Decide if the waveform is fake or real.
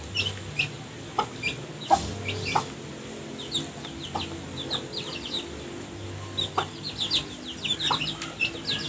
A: real